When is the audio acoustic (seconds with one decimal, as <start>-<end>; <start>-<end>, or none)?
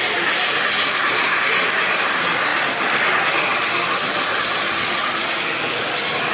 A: 0.0-6.3